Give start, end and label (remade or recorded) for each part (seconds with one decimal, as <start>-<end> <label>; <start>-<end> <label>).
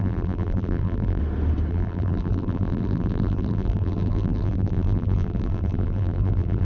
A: 0.0-1.2 remade; 1.2-1.7 recorded; 1.7-6.6 remade